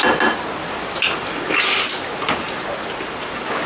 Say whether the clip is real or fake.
real